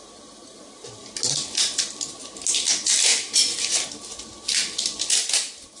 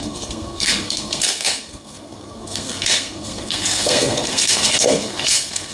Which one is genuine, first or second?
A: first